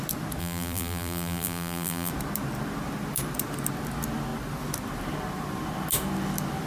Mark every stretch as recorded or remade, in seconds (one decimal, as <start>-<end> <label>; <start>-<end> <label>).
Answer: 0.0-0.4 recorded; 0.4-2.1 remade; 2.1-6.7 recorded